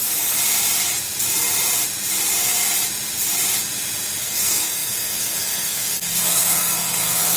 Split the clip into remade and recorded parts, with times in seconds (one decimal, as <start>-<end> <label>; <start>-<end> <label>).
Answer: 0.0-4.2 recorded; 4.2-7.4 remade